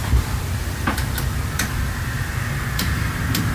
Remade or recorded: remade